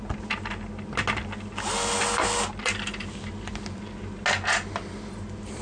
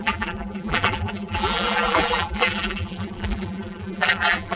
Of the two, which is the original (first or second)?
first